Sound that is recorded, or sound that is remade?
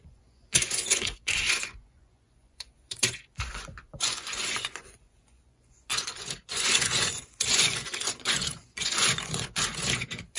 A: remade